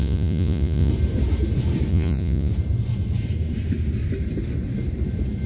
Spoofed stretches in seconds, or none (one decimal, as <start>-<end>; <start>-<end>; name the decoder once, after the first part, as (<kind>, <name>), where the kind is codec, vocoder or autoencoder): 0.0-0.9 (vocoder, Vocos); 1.9-2.5